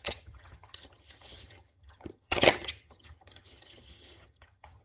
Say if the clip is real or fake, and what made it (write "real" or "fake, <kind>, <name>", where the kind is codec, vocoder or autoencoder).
fake, vocoder, HiFi-GAN